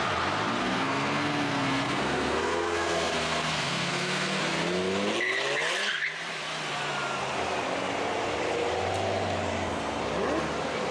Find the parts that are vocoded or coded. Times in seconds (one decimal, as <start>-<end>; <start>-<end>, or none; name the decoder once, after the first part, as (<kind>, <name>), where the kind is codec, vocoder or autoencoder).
0.6-4.4 (codec, SNAC); 9.5-10.0